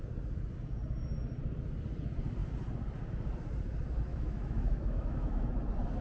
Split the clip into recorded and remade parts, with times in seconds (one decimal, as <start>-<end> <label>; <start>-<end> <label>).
0.0-4.1 recorded; 4.1-5.5 remade; 5.5-6.0 recorded